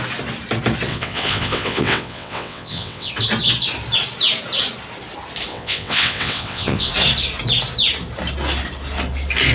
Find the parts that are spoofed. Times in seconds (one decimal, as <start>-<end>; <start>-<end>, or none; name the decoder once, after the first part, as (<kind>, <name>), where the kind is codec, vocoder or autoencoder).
0.9-3.1 (vocoder, WaveNeXt); 5.5-6.9